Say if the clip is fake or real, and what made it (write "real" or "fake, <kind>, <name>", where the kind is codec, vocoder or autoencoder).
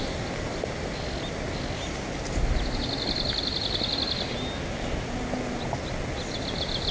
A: real